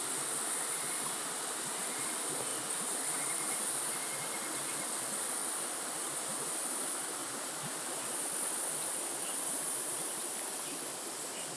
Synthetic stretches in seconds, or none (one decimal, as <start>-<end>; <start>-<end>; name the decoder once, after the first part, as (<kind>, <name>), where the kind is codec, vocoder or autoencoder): 2.5-3.7 (vocoder, BigVGAN v2); 7.2-7.9